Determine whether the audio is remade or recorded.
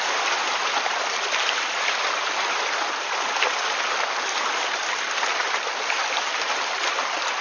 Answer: recorded